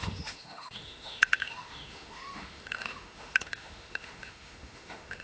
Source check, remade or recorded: remade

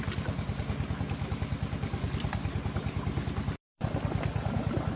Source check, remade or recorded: recorded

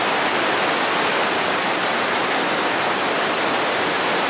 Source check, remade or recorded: recorded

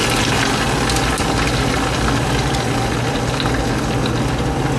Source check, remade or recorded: recorded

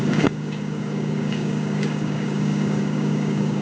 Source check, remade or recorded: remade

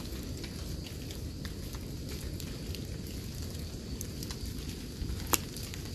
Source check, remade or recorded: recorded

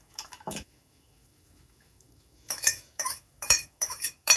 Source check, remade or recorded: remade